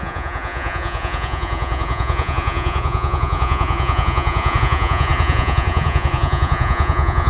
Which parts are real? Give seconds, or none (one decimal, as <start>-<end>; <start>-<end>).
none